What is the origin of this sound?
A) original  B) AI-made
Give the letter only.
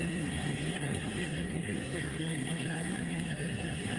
B